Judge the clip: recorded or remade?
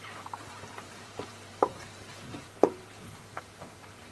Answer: remade